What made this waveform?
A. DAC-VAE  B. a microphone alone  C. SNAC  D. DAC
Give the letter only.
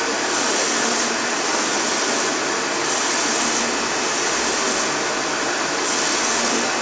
B